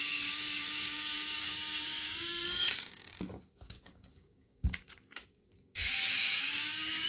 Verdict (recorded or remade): remade